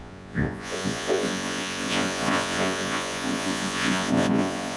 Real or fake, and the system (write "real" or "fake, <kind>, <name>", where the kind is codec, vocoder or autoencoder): fake, vocoder, Vocos